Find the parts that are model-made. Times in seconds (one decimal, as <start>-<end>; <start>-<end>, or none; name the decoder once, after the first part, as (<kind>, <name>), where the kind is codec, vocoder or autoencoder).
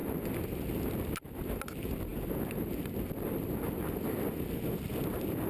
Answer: none